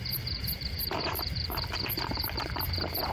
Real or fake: fake